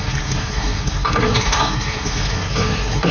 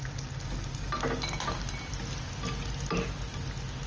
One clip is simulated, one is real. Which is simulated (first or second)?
first